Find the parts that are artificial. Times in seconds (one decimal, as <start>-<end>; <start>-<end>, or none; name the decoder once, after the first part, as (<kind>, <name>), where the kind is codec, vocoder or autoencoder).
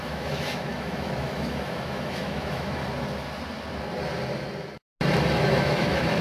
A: 0.0-2.8 (autoencoder, DAC-VAE); 5.4-6.2